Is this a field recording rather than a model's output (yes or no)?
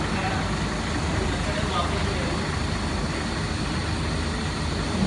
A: yes